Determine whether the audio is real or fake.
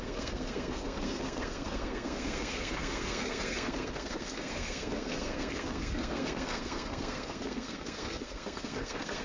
fake